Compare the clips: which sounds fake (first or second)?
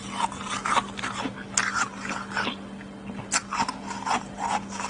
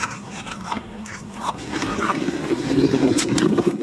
second